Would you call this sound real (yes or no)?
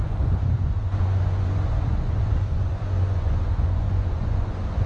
no